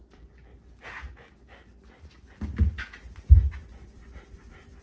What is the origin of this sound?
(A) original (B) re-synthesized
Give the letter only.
A